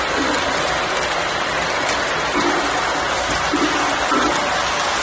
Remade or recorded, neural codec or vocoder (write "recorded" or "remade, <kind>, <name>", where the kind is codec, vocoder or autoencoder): recorded